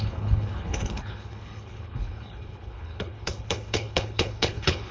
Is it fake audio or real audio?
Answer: fake